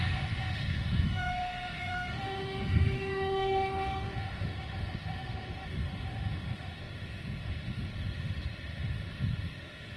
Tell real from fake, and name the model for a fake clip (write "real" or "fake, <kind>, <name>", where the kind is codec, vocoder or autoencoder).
fake, autoencoder, DAC-VAE